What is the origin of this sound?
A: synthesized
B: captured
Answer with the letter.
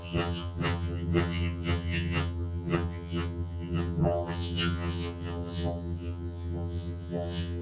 A